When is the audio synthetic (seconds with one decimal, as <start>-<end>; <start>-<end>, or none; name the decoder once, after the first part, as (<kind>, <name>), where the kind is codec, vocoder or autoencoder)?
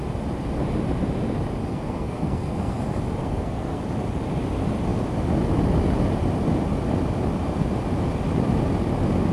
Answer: 1.7-2.8 (codec, SNAC); 3.2-3.8